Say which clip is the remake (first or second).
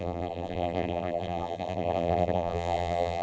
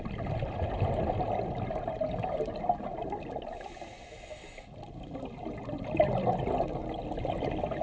first